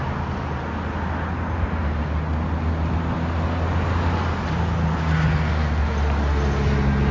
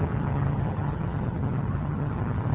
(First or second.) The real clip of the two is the first